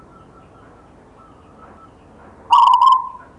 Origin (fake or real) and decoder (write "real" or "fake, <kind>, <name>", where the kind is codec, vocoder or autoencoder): real